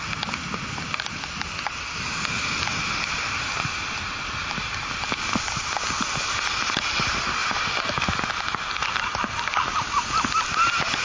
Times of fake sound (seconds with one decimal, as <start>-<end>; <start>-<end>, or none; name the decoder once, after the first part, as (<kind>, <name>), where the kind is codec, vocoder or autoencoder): none